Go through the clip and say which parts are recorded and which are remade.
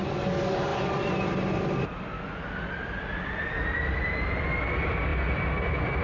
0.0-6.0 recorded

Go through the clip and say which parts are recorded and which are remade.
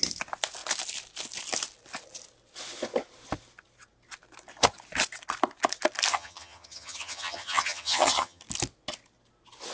0.0-6.1 recorded; 6.1-8.4 remade; 8.4-9.7 recorded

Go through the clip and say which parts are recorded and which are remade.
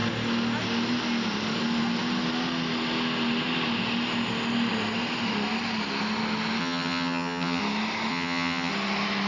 0.0-6.6 recorded; 6.6-7.6 remade; 7.6-8.1 recorded; 8.1-8.7 remade; 8.7-9.3 recorded